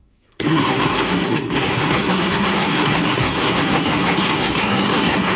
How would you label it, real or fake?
fake